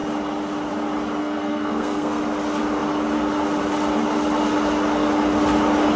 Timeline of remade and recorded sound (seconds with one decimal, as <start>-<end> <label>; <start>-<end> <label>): 0.0-1.2 recorded; 1.2-2.2 remade; 2.2-6.0 recorded